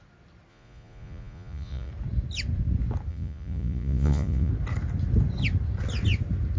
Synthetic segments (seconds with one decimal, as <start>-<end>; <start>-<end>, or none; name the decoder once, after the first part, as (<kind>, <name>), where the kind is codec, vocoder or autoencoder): 0.5-1.9 (vocoder, Vocos); 3.1-4.5